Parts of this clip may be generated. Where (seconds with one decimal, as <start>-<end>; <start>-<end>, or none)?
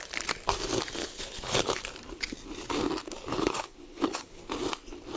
1.0-1.8; 3.3-4.4